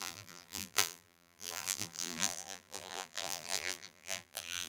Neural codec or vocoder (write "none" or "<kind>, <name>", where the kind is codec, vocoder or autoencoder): vocoder, BigVGAN v2